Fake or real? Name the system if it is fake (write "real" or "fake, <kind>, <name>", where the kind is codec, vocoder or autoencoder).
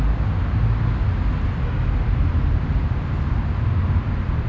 real